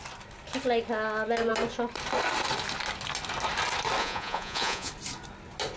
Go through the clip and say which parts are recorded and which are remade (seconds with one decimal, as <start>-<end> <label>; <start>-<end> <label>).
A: 0.0-4.0 recorded; 4.0-4.9 remade; 4.9-5.8 recorded

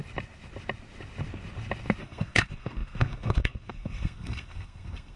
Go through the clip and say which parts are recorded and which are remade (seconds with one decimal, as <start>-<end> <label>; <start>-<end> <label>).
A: 0.0-2.0 recorded; 2.0-5.2 remade

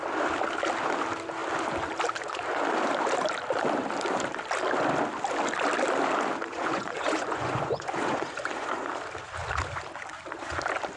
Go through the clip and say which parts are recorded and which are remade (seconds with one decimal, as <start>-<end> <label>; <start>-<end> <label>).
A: 0.0-6.5 recorded; 6.5-8.9 remade; 8.9-11.0 recorded

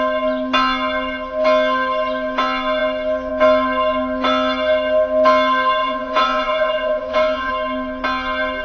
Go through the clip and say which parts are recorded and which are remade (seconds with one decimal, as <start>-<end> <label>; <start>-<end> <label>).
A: 0.0-5.8 recorded; 5.8-7.5 remade; 7.5-8.6 recorded

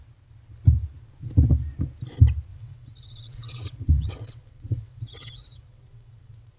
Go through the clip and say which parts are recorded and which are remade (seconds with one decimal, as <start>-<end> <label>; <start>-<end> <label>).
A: 0.0-2.5 recorded; 2.5-6.6 remade